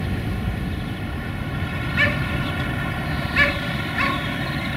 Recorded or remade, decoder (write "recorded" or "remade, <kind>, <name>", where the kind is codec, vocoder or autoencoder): remade, vocoder, BigVGAN v2